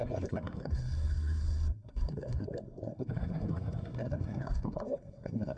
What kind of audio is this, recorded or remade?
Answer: remade